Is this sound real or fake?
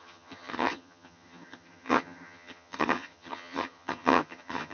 fake